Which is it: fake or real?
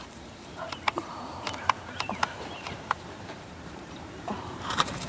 fake